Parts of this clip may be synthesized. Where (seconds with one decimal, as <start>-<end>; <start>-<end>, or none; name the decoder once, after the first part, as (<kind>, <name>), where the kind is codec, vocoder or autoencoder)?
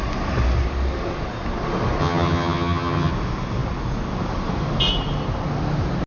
2.0-3.1 (vocoder, HiFi-GAN)